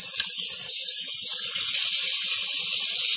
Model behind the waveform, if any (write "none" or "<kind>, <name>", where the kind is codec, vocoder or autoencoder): none